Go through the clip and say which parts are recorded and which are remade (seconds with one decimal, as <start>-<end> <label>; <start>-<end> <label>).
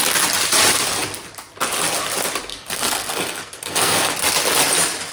0.0-2.5 recorded; 2.5-4.1 remade; 4.1-5.1 recorded